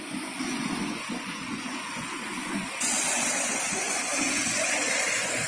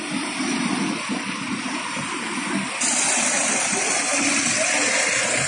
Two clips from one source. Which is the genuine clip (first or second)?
second